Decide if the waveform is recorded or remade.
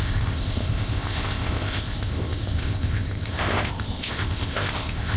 remade